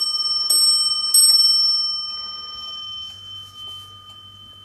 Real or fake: real